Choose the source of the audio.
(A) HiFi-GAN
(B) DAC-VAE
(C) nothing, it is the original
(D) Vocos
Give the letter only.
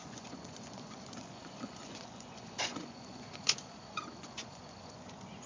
D